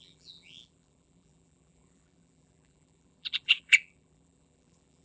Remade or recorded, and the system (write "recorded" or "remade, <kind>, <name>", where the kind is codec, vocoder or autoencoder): remade, vocoder, BigVGAN v2